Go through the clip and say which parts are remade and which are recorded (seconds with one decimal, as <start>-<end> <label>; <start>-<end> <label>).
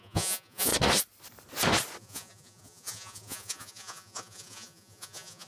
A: 0.0-0.7 remade; 0.7-2.0 recorded; 2.0-5.5 remade